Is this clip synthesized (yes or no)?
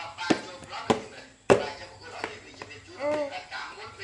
no